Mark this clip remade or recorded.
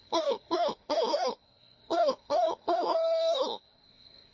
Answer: remade